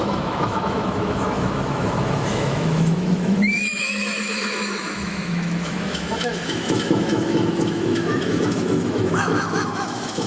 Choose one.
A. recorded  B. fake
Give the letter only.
B